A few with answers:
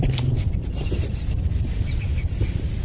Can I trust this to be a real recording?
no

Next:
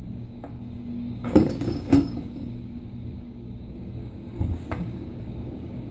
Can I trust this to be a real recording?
no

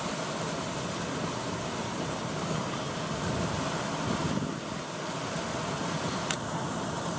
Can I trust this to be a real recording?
yes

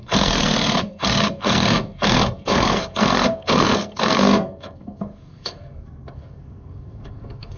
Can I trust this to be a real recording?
no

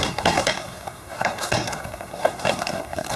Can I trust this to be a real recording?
no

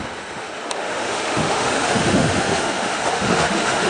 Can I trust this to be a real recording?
no